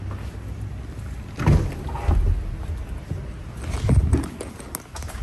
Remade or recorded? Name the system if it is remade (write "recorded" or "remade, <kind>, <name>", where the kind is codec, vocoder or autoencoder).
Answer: recorded